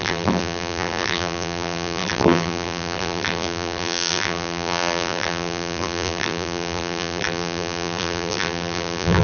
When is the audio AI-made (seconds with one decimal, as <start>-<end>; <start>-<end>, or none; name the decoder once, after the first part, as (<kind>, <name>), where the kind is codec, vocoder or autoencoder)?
0.0-9.2 (vocoder, BigVGAN v2)